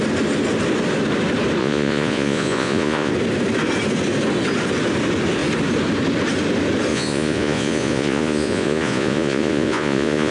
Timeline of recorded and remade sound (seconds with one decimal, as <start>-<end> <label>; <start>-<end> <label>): 0.0-1.6 recorded; 1.6-3.1 remade; 3.1-6.9 recorded; 6.9-10.3 remade